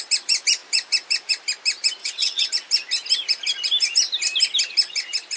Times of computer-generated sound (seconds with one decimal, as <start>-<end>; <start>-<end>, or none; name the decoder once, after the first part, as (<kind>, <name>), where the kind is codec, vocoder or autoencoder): 2.0-2.5 (vocoder, WaveNeXt)